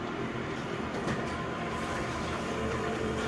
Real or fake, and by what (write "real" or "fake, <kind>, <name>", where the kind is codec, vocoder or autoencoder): fake, vocoder, BigVGAN v2